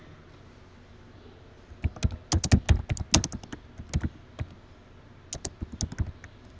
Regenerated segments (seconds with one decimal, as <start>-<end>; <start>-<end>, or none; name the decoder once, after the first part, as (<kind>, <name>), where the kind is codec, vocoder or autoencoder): none